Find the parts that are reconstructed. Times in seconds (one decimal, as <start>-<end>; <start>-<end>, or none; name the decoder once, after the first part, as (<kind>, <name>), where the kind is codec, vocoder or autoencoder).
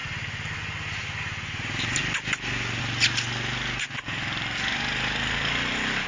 none